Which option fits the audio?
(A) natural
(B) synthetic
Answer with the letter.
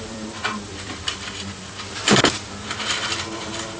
B